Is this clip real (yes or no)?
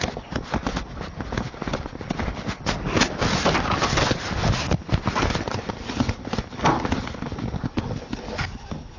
yes